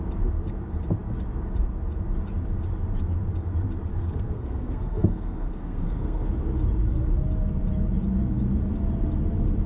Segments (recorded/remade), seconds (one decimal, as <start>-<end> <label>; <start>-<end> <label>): 0.0-3.9 recorded; 3.9-6.3 remade; 6.3-9.7 recorded